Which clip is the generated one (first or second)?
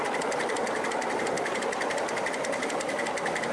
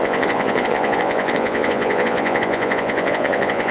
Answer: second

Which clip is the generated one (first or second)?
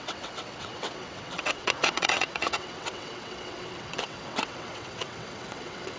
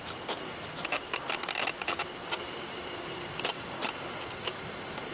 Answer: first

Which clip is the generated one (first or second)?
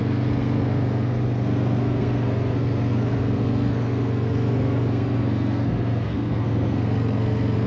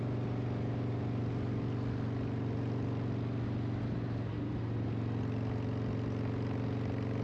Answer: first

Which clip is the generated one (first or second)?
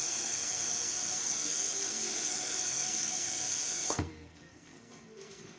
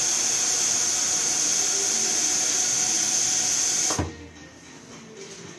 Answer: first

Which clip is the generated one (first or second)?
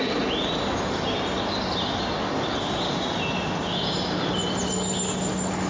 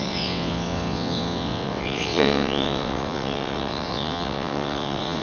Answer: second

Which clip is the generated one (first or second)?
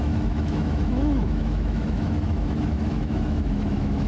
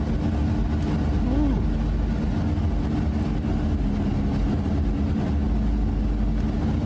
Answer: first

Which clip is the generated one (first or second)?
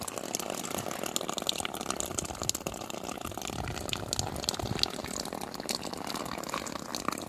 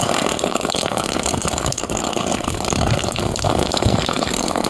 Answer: second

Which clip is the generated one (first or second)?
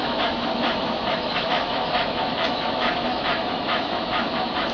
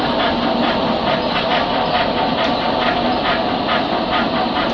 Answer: first